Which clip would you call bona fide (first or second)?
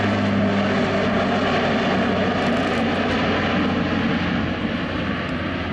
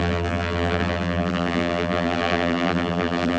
first